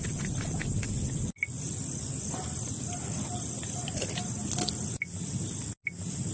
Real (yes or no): yes